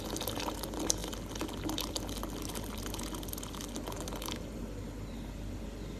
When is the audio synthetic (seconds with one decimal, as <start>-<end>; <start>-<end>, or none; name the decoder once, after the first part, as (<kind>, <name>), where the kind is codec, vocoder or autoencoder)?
none